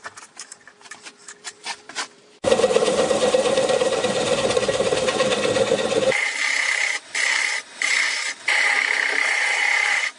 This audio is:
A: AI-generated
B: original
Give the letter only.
A